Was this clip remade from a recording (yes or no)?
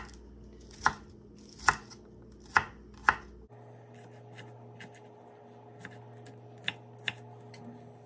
no